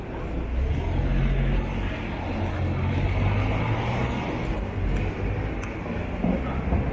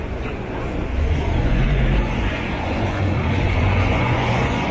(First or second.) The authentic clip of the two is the first